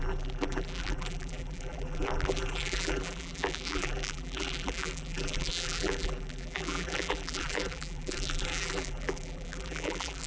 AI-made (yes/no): yes